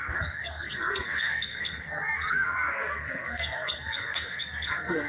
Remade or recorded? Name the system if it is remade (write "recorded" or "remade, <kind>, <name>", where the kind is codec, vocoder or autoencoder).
remade, codec, SNAC